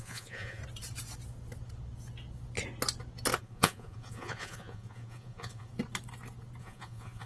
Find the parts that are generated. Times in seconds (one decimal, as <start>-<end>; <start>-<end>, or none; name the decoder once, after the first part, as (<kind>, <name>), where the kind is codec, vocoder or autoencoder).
0.0-0.6 (vocoder, Vocos); 3.4-5.7; 6.6-7.3